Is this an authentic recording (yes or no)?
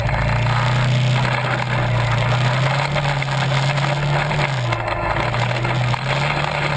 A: yes